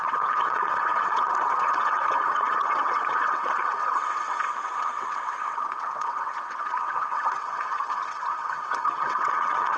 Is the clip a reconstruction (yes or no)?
yes